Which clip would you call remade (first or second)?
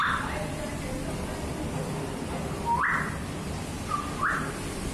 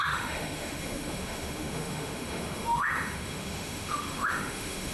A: second